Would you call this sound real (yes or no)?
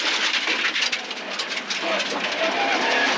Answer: yes